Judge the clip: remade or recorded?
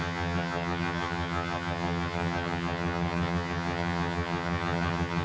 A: remade